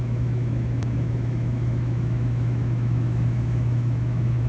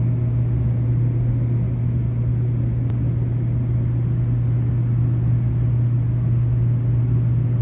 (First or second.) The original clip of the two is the second